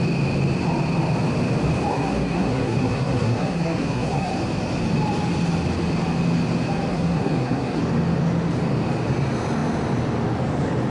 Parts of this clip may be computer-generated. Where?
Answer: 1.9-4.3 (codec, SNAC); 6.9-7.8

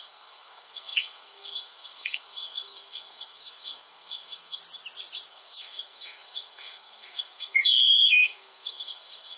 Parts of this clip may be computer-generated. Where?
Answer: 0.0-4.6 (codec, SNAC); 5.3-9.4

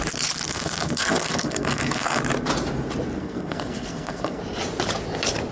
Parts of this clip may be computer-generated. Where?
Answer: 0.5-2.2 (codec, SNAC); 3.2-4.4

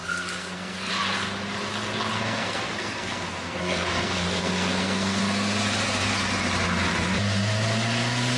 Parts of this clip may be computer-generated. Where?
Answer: 0.0-0.9 (codec, SNAC); 2.1-5.2